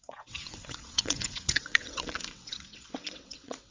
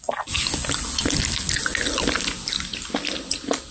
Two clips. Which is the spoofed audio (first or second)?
first